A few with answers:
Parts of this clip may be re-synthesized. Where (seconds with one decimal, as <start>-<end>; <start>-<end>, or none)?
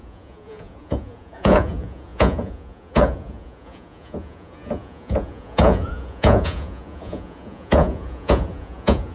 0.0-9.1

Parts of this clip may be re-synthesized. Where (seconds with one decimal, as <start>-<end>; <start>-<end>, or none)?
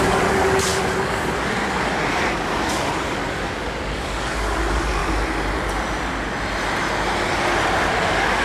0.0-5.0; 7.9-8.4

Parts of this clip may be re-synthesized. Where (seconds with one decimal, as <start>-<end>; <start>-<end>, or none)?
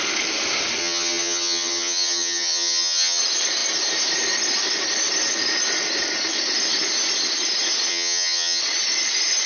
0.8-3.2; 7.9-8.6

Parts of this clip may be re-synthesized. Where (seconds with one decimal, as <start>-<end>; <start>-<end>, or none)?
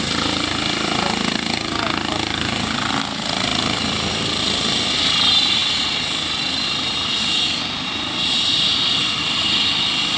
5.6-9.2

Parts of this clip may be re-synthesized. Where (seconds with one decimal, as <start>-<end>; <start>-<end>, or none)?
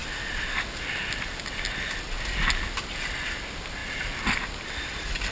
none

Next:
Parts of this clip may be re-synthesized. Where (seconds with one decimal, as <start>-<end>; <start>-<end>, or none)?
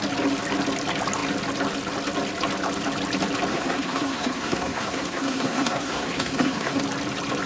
3.5-6.8